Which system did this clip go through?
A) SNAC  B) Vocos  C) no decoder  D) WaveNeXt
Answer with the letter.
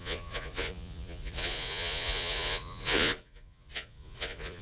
B